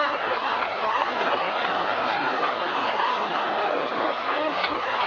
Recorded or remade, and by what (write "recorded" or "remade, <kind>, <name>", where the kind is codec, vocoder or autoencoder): remade, codec, SNAC